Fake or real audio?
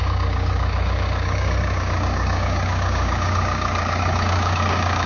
fake